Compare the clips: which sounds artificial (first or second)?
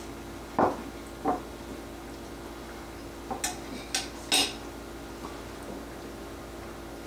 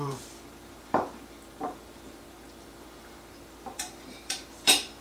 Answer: second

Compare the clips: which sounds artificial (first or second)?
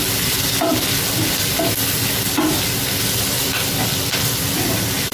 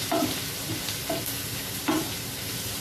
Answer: second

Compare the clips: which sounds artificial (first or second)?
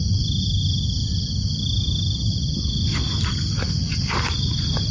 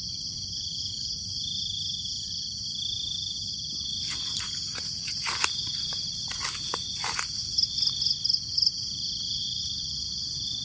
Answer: first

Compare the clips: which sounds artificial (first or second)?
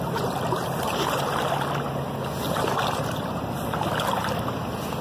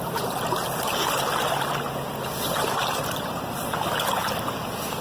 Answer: first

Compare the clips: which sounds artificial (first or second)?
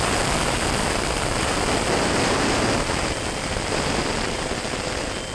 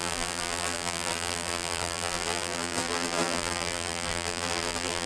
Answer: second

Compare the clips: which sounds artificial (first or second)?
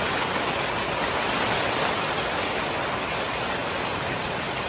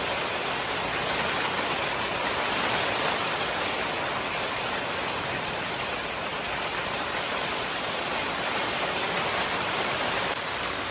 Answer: second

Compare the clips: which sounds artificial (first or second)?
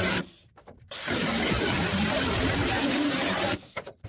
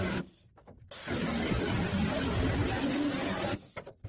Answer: first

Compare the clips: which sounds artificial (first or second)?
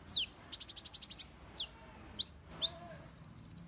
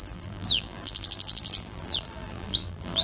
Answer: second